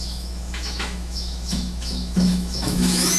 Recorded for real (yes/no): no